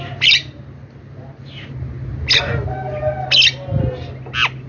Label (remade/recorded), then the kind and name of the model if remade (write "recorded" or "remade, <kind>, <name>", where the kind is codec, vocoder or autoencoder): recorded